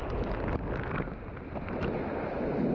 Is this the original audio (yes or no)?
yes